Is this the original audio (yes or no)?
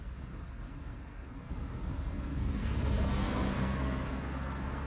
no